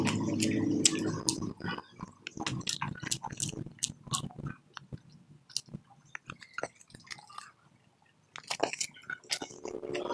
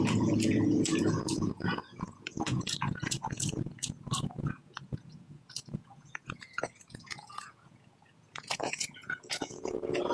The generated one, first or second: second